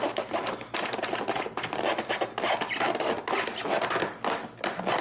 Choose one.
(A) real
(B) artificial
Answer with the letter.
A